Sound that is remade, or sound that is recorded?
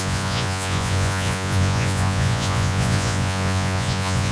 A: remade